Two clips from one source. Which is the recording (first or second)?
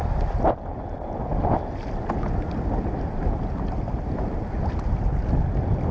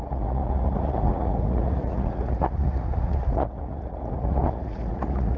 first